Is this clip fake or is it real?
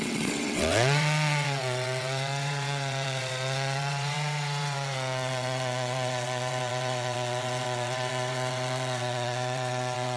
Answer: fake